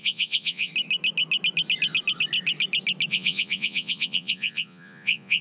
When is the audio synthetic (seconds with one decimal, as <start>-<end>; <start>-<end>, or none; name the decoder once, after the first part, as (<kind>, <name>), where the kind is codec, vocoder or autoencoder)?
0.0-0.7 (vocoder, Vocos); 3.1-5.4